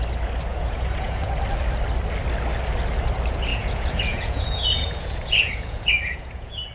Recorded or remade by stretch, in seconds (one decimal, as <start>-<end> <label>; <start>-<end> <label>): 0.0-0.5 recorded; 0.5-1.3 remade; 1.3-3.5 recorded; 3.5-6.7 remade